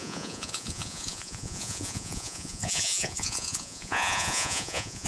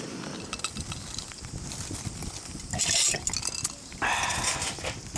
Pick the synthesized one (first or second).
first